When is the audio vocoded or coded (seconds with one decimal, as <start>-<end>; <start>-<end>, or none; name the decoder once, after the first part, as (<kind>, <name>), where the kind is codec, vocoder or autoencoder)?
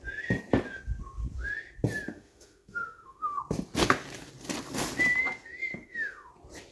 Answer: 2.1-3.4 (autoencoder, DAC-VAE); 5.7-6.3